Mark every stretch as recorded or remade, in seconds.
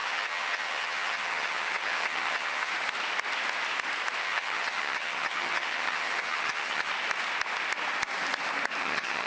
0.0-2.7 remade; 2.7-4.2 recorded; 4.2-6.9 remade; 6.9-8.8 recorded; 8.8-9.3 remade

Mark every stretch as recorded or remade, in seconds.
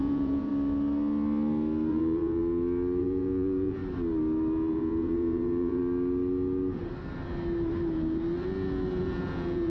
0.0-0.5 remade; 0.5-1.9 recorded; 1.9-2.4 remade; 2.4-3.0 recorded; 3.0-3.8 remade; 3.8-4.7 recorded; 4.7-5.8 remade; 5.8-9.0 recorded; 9.0-9.7 remade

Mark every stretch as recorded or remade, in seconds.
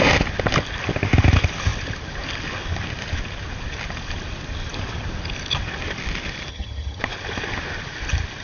0.0-6.5 recorded; 6.5-7.0 remade; 7.0-8.4 recorded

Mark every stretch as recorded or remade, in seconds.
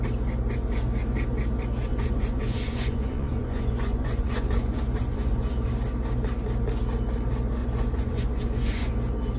0.0-1.9 recorded; 1.9-5.7 remade; 5.7-7.6 recorded; 7.6-8.9 remade; 8.9-9.4 recorded